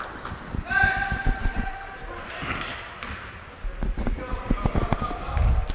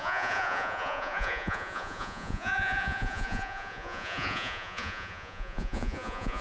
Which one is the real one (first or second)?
first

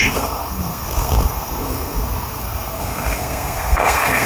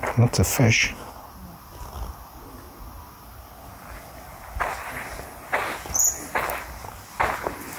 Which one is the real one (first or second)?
second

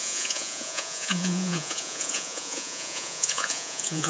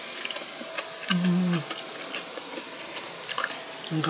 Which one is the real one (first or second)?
second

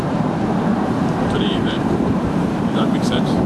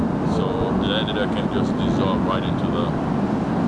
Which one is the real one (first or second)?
second